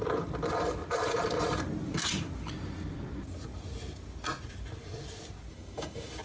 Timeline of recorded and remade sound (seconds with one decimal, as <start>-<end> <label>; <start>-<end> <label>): 0.0-5.5 recorded; 5.5-6.2 remade